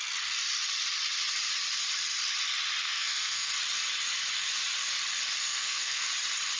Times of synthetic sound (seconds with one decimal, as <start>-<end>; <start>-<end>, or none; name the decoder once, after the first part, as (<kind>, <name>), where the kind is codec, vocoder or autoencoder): 2.8-3.5 (codec, SNAC); 5.4-6.0